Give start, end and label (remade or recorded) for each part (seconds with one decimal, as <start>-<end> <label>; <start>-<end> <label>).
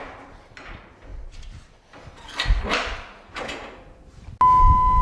0.0-5.0 recorded